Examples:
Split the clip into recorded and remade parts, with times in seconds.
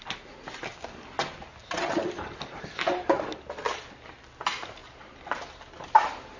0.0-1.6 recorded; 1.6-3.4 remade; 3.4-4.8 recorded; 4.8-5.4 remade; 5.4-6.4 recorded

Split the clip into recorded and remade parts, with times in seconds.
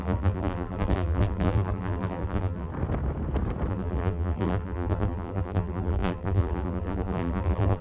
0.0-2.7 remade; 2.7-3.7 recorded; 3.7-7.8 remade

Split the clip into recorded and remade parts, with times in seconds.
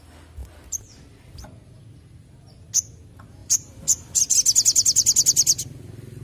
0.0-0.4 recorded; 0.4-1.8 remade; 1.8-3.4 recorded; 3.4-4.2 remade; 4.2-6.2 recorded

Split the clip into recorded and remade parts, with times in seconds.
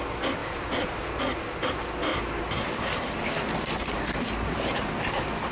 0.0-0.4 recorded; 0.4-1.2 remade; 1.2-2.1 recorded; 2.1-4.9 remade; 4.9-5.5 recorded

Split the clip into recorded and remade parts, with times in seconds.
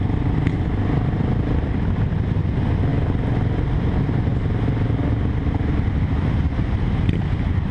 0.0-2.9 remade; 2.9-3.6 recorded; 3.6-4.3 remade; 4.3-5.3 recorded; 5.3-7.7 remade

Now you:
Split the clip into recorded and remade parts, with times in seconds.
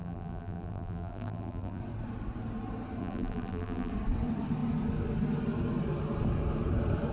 0.0-1.8 remade; 1.8-3.0 recorded; 3.0-3.9 remade; 3.9-7.1 recorded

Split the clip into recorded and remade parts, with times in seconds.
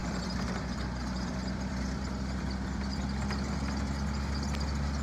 0.0-3.0 remade; 3.0-5.0 recorded